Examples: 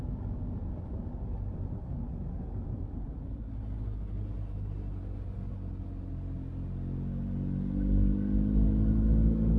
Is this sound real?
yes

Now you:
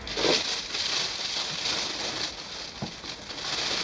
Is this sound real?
yes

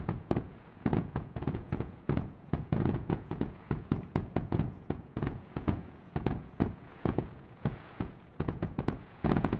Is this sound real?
no